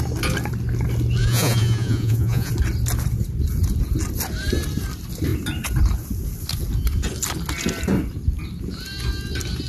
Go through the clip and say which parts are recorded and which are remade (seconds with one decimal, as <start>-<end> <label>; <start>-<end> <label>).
0.0-1.2 recorded; 1.2-2.5 remade; 2.5-9.7 recorded